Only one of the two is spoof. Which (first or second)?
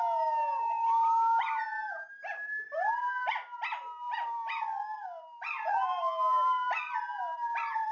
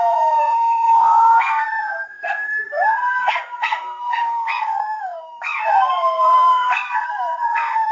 second